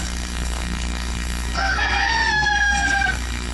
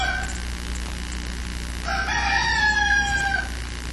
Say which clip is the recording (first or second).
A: second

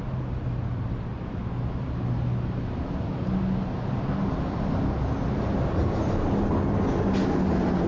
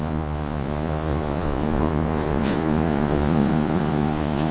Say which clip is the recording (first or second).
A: first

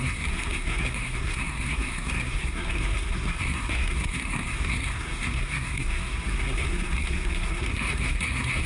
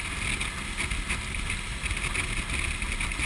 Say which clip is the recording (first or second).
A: second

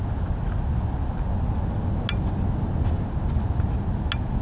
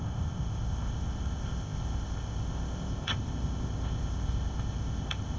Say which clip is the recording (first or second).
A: first